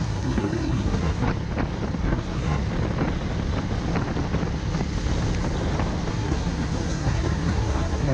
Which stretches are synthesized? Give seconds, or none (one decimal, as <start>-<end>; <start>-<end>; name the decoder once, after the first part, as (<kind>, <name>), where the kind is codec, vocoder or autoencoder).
0.0-1.3 (codec, SNAC); 2.0-2.6; 6.1-8.1